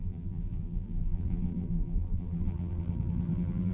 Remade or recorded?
remade